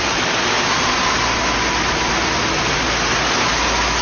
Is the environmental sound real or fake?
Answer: real